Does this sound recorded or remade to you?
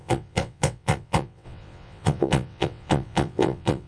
remade